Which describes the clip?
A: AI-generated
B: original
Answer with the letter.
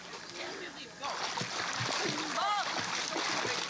B